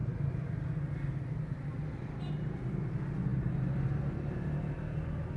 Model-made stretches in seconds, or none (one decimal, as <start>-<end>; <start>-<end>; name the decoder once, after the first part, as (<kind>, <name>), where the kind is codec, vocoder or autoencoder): none